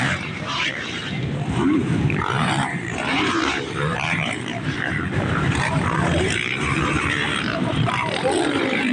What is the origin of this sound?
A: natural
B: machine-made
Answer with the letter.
B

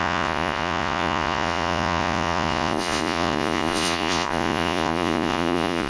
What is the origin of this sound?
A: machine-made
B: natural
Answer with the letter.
A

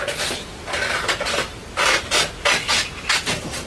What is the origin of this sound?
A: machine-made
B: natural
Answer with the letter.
B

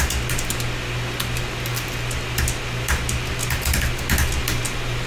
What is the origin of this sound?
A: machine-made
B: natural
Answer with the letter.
B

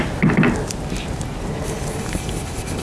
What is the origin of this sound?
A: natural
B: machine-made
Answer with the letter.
A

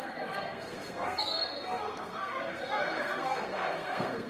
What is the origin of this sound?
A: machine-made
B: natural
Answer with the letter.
A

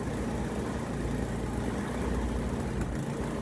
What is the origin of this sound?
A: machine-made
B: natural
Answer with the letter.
B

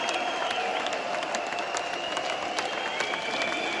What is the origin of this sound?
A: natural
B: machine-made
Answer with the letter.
A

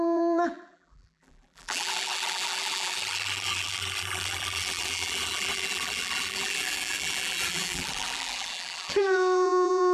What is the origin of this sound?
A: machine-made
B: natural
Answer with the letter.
A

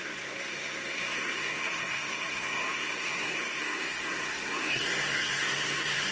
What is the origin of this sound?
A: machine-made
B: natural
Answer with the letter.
A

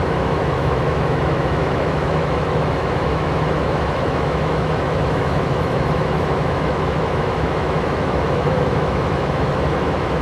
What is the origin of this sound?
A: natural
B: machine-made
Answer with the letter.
B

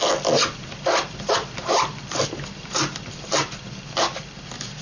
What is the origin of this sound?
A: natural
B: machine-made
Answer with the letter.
A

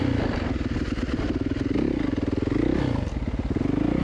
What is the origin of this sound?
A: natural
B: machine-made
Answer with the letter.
A